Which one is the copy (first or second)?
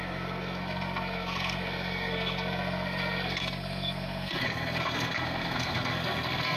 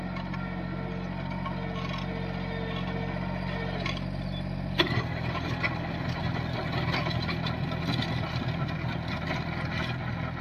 first